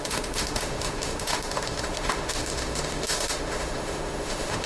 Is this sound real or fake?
fake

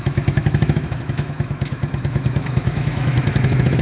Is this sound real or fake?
fake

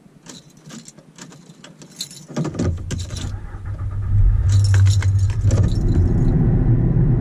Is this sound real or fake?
real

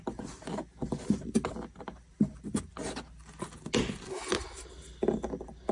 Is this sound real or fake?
real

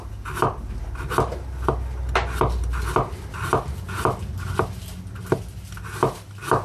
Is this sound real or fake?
real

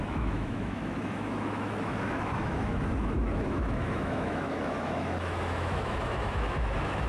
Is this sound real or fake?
fake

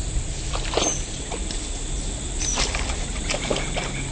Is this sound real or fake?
real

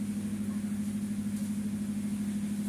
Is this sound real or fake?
real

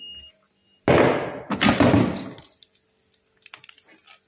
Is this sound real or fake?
real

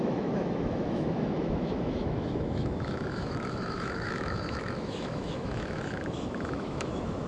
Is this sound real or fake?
fake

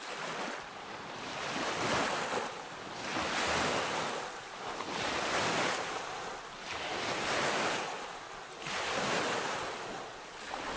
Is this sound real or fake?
real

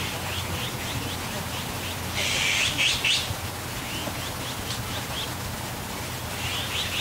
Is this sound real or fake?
real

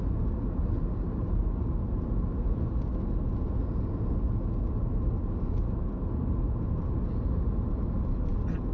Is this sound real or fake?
real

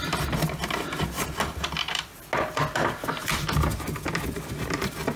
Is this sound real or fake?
real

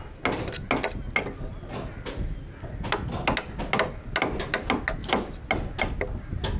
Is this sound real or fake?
real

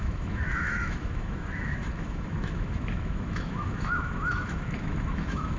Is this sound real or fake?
fake